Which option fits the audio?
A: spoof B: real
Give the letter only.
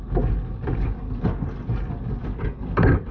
B